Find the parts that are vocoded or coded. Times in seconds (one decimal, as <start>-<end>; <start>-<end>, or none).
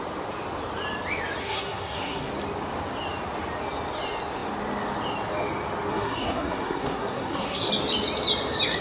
1.4-2.3; 5.9-7.7